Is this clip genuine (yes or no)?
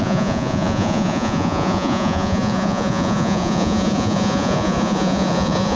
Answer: no